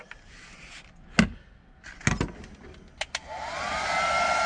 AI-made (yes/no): no